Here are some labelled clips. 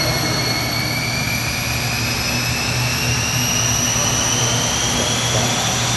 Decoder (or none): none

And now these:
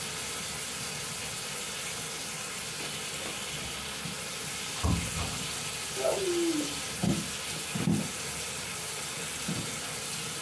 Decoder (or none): none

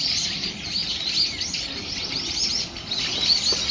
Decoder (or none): none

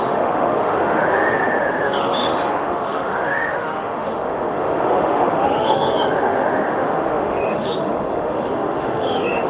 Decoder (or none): autoencoder, DAC-VAE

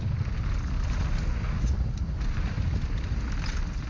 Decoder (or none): none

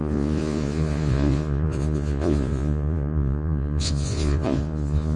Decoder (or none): vocoder, Vocos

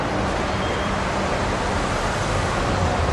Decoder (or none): vocoder, BigVGAN v2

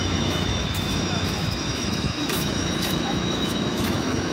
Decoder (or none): autoencoder, DAC-VAE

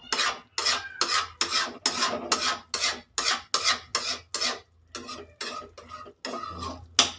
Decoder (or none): none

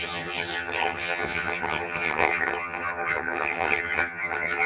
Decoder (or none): vocoder, HiFi-GAN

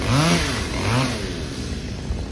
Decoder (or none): none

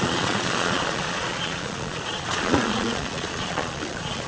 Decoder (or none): vocoder, Vocos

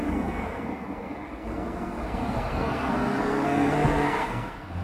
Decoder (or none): codec, SNAC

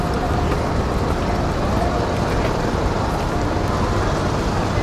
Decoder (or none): none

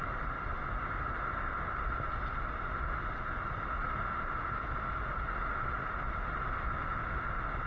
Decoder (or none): none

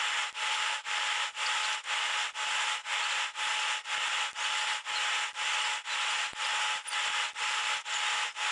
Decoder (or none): none